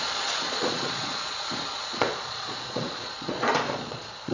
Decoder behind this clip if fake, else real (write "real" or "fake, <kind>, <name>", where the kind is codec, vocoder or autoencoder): fake, vocoder, Vocos